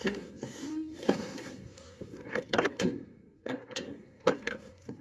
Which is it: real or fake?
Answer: fake